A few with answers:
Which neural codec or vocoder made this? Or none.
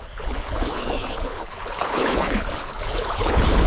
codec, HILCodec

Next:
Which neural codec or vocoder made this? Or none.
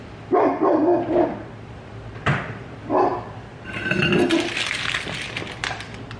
none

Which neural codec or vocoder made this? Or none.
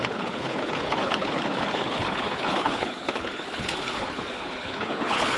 codec, HILCodec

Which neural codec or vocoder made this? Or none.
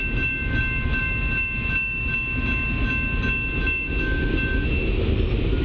none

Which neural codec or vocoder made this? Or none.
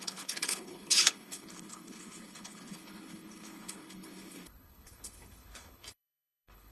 codec, HILCodec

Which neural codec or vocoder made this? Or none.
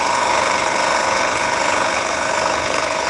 codec, HILCodec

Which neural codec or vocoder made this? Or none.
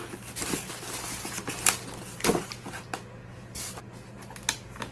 none